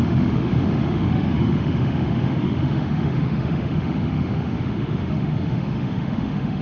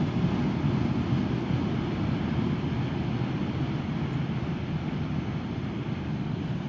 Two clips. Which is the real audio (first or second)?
second